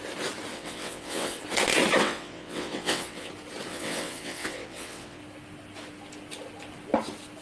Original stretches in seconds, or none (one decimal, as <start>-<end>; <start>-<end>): 0.0-0.5; 1.4-2.0; 3.3-3.7; 5.2-7.4